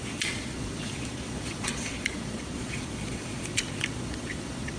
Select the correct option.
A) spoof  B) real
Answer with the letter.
A